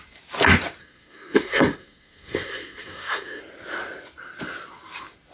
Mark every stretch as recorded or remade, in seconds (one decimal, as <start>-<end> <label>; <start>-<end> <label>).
0.0-0.8 recorded; 0.8-3.4 remade; 3.4-5.3 recorded

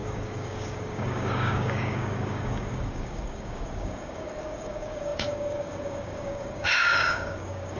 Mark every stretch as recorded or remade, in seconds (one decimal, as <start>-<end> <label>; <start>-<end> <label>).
0.0-7.8 remade

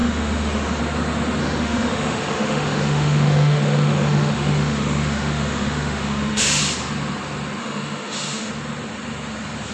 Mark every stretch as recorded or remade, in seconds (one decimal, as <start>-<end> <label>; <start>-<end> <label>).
0.0-0.8 remade; 0.8-1.4 recorded; 1.4-6.6 remade; 6.6-7.6 recorded; 7.6-8.5 remade; 8.5-9.7 recorded

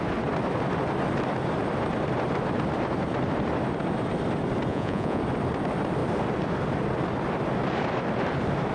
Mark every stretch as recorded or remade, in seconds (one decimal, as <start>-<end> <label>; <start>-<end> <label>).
0.0-4.7 recorded; 4.7-5.2 remade; 5.2-8.7 recorded

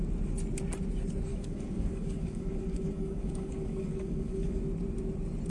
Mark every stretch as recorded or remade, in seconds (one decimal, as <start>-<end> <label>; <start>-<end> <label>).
0.0-1.3 recorded; 1.3-4.6 remade; 4.6-5.5 recorded

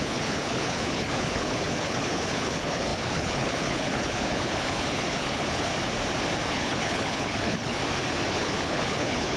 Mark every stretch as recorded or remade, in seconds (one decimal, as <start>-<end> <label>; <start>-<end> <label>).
0.0-5.7 remade; 5.7-6.5 recorded; 6.5-7.8 remade; 7.8-8.3 recorded; 8.3-9.4 remade